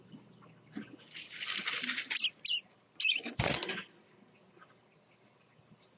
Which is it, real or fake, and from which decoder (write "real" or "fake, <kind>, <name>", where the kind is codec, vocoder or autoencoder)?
real